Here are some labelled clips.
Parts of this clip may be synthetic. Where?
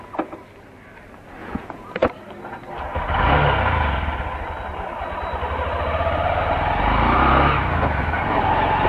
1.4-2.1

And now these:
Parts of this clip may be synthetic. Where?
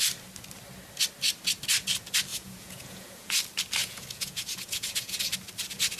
2.3-3.3; 3.8-5.2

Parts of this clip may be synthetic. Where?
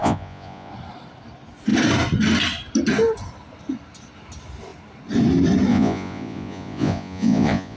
0.0-0.7; 5.7-7.8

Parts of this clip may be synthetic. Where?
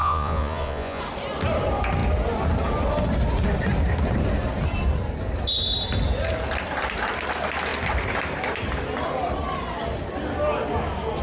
0.0-1.0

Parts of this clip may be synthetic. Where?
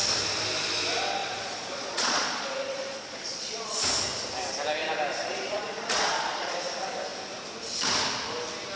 1.2-3.9; 5.2-6.5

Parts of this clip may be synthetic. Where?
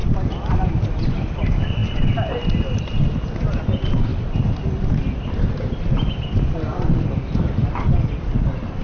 none